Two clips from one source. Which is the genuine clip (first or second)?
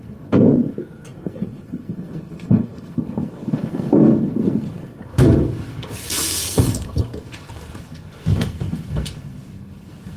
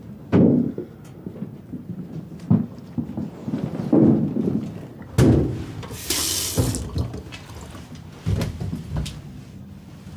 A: second